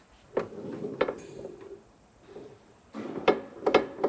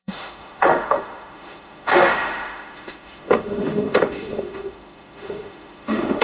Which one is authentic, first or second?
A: first